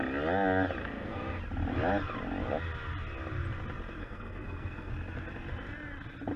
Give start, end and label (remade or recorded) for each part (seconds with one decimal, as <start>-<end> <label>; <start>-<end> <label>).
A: 0.0-0.8 recorded; 0.8-1.4 remade; 1.4-4.0 recorded; 4.0-4.9 remade; 4.9-6.4 recorded